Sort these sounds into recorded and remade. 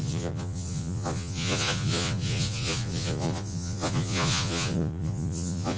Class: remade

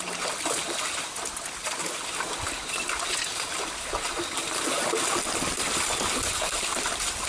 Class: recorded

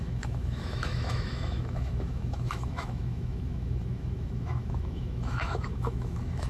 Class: remade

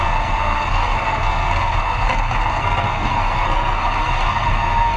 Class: remade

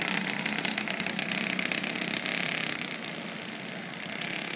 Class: recorded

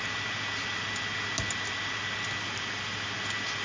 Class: recorded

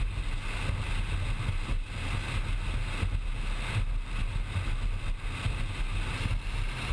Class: recorded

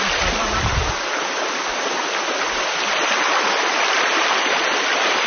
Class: recorded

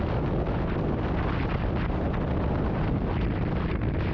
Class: recorded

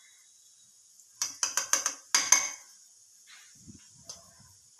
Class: recorded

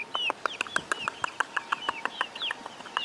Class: recorded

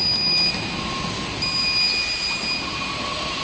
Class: recorded